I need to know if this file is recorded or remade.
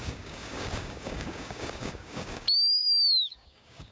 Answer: remade